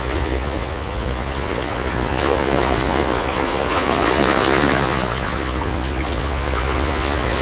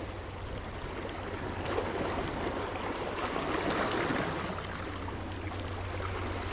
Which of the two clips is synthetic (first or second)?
first